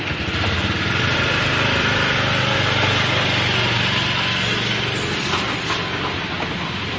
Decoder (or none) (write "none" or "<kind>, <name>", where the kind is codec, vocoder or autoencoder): none